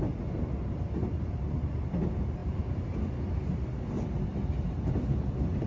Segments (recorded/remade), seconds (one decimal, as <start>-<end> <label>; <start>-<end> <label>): 0.0-4.3 recorded; 4.3-5.0 remade; 5.0-5.7 recorded